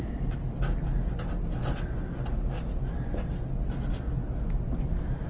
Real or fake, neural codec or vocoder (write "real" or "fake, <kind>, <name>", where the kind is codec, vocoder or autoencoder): real